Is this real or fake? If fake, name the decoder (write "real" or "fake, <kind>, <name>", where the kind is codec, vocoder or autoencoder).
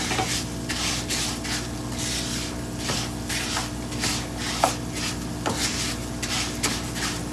real